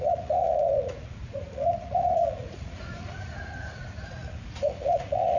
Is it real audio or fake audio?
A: fake